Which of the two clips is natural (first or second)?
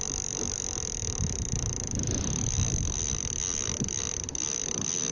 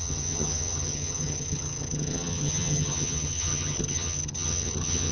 first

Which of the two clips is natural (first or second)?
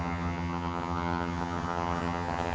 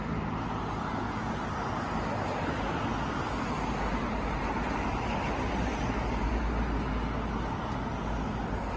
second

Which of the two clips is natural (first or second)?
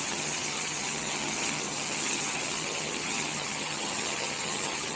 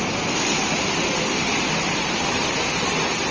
second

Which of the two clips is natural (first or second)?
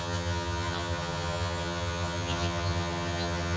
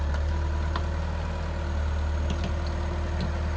second